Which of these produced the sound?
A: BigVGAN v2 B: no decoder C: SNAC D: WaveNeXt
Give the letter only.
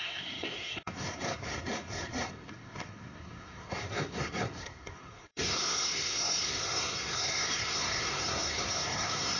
C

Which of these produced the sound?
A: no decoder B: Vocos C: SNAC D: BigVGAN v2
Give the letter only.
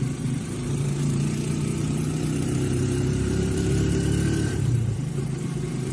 D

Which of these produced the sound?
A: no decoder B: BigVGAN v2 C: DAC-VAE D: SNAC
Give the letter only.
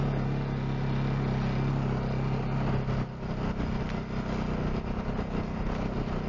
A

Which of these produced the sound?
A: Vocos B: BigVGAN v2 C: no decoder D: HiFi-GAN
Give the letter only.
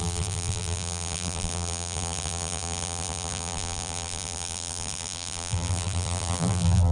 B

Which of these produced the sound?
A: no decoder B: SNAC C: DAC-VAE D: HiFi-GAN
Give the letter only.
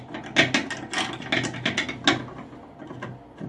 A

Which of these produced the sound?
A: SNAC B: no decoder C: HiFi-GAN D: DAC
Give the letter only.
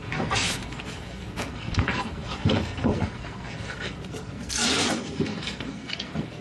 A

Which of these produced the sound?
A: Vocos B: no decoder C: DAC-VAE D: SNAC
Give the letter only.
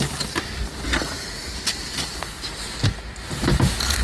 B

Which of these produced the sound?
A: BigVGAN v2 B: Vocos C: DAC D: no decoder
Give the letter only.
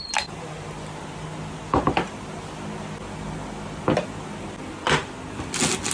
D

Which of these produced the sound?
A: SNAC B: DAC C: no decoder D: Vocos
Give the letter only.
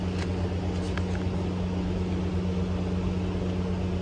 C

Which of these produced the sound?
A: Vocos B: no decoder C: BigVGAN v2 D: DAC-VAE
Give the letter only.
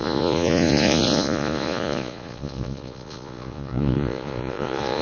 A